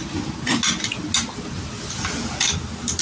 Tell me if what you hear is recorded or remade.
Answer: recorded